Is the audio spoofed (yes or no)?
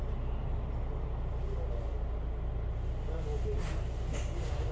no